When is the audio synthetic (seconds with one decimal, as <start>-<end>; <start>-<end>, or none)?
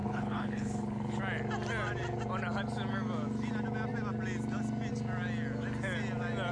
0.0-1.2